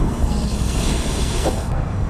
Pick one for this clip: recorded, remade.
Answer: remade